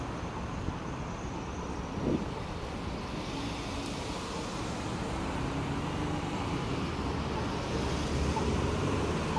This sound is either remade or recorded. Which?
recorded